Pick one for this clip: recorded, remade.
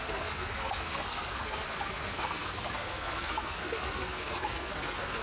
remade